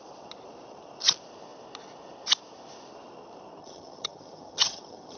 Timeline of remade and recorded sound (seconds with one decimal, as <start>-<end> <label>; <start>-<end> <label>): 0.0-3.6 recorded; 3.6-5.2 remade